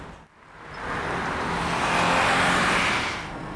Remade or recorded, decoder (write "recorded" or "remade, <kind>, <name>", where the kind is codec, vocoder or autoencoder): recorded